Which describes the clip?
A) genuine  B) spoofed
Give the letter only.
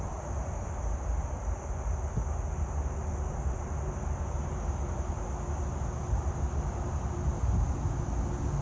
A